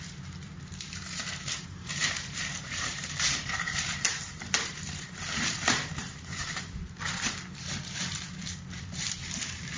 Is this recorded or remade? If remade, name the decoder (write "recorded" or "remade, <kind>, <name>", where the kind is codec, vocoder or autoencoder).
remade, vocoder, BigVGAN v2